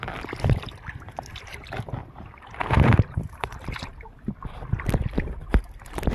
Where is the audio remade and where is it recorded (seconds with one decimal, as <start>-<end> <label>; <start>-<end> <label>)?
0.0-2.0 recorded; 2.0-3.9 remade; 3.9-6.1 recorded